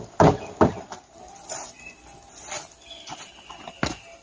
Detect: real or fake real